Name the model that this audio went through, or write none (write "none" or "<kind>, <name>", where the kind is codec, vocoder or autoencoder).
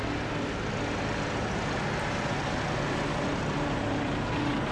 none